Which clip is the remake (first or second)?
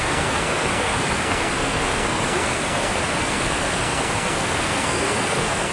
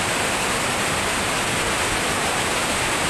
first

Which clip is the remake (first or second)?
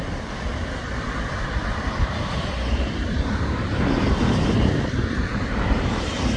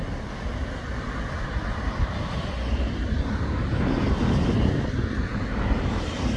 first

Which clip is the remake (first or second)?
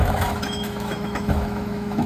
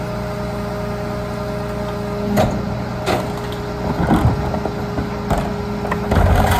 first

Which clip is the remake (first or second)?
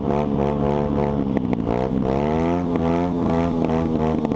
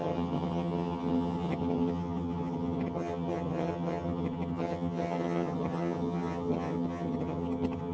second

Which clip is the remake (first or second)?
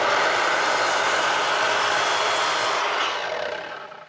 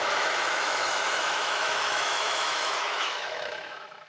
second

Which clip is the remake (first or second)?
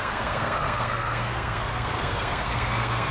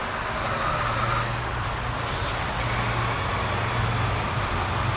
first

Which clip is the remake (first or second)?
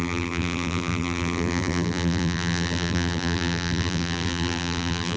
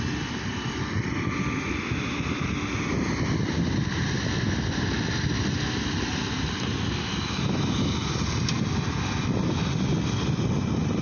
first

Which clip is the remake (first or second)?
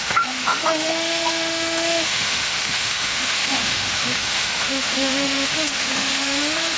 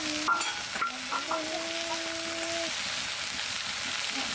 first